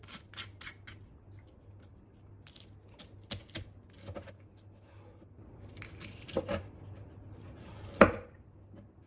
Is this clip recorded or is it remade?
recorded